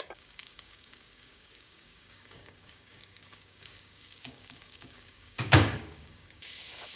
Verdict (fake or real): fake